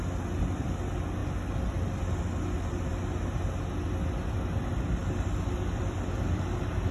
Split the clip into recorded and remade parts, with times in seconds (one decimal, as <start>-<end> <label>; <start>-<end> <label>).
0.0-6.9 recorded

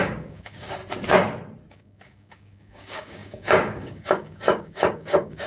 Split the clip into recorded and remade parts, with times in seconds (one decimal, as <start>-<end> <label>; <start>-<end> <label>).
0.0-0.8 remade; 0.8-1.7 recorded; 1.7-5.5 remade

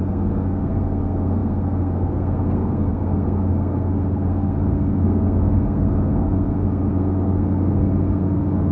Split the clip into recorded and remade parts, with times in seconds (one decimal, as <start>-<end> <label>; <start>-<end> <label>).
0.0-8.7 remade

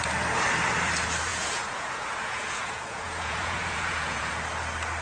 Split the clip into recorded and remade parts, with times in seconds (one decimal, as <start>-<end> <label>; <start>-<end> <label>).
0.0-1.3 recorded; 1.3-4.3 remade; 4.3-5.0 recorded

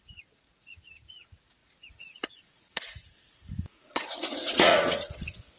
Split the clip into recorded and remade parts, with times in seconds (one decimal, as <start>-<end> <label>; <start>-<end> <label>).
0.0-5.6 remade

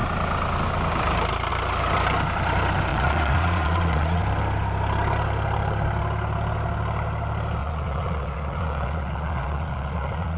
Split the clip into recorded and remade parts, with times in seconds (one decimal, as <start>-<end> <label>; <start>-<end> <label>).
0.0-2.9 recorded; 2.9-4.2 remade; 4.2-7.6 recorded; 7.6-10.4 remade

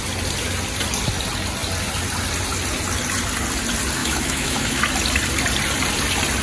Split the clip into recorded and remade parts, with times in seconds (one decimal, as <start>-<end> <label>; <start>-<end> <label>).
0.0-4.0 recorded; 4.0-4.8 remade; 4.8-6.4 recorded

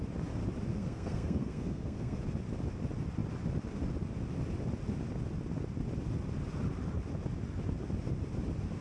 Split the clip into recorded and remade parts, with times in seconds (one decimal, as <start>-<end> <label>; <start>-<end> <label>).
0.0-0.7 recorded; 0.7-2.2 remade; 2.2-8.8 recorded